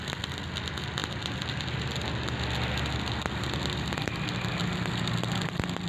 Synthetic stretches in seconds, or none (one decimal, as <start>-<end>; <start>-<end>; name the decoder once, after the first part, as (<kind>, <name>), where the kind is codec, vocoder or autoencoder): none